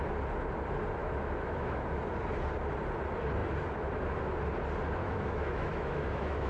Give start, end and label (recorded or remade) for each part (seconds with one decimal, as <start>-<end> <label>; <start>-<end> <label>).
0.0-1.0 recorded; 1.0-1.8 remade; 1.8-5.0 recorded; 5.0-6.5 remade